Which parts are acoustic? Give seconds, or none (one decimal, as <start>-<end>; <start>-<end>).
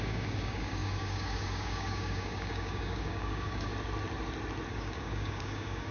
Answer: 3.7-4.7